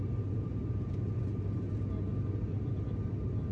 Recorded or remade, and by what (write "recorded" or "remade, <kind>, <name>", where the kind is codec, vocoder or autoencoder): recorded